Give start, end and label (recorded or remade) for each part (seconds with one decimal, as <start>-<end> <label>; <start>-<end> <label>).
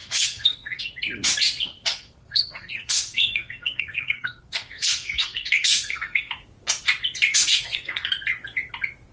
0.0-0.8 remade; 0.8-1.9 recorded; 1.9-6.3 remade; 6.3-7.3 recorded; 7.3-8.1 remade; 8.1-9.1 recorded